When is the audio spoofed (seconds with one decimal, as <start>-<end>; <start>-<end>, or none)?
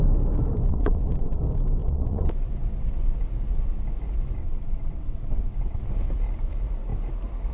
0.7-1.4; 1.8-2.3; 4.4-5.8